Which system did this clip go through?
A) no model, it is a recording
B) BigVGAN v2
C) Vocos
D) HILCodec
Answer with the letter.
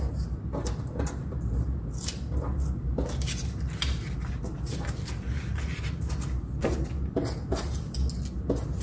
A